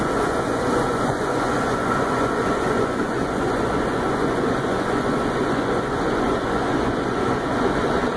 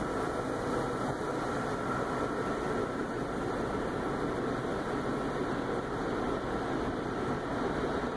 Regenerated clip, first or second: first